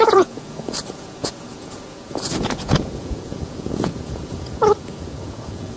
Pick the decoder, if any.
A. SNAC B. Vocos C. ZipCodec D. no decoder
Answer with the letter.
B